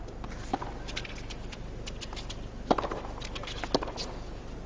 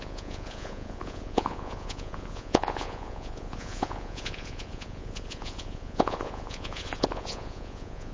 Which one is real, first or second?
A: first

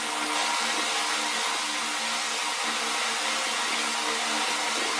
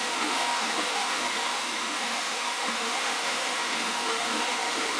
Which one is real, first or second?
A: first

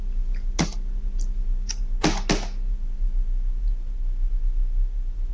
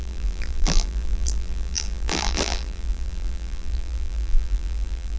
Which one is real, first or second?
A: first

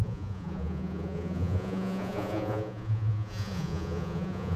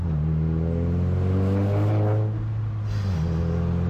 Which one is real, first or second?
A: second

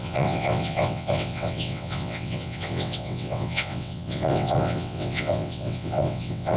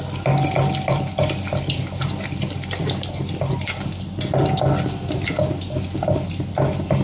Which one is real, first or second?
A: second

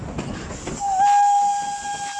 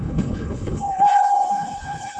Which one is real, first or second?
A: first